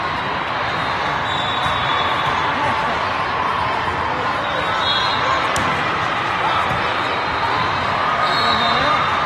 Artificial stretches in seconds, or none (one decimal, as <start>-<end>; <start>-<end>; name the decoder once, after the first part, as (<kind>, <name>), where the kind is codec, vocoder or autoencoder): 0.0-1.0 (vocoder, BigVGAN v2); 1.6-2.4; 5.5-9.3